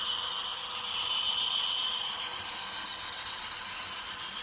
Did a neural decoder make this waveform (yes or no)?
no